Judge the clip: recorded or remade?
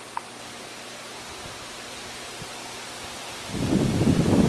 recorded